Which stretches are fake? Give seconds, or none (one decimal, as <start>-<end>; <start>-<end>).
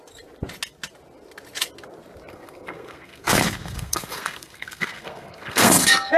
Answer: 2.3-6.2